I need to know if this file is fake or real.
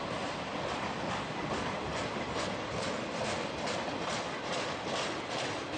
real